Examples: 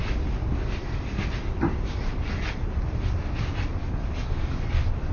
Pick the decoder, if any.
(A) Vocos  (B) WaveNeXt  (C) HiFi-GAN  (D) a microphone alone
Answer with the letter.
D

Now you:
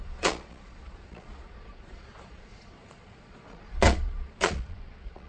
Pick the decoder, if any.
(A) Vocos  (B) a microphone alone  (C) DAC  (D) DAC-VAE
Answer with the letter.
A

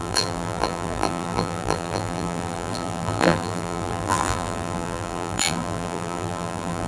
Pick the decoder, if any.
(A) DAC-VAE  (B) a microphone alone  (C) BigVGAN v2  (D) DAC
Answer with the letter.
C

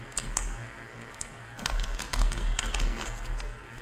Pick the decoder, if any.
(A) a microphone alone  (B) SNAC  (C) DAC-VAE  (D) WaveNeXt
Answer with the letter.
B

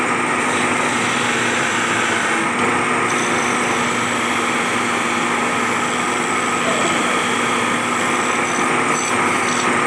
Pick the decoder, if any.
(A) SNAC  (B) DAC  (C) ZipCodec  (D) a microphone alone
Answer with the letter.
D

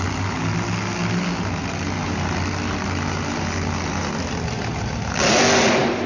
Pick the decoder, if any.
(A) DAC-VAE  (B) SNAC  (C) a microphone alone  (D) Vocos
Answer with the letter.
C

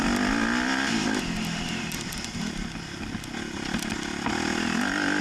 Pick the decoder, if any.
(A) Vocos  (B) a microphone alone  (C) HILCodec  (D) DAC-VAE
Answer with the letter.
B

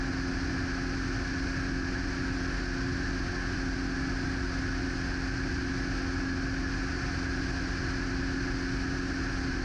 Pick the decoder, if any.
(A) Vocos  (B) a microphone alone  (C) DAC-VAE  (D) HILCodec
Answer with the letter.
B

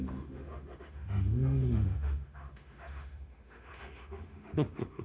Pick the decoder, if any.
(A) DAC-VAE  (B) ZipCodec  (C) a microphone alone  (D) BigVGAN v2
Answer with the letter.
A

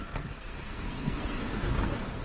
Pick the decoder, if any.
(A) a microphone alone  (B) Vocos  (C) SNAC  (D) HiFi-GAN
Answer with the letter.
C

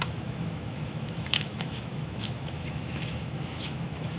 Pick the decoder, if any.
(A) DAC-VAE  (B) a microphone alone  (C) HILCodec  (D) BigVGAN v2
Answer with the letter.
A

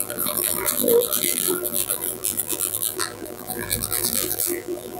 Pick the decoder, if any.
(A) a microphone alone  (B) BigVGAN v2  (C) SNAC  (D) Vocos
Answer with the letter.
B